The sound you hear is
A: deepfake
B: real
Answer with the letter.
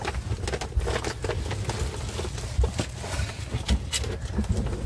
B